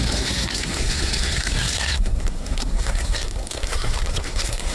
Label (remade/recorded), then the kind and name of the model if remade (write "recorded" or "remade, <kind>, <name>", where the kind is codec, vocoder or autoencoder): remade, codec, SNAC